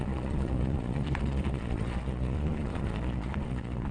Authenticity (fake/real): fake